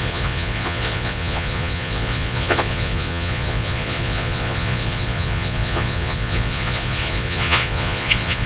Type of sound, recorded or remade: remade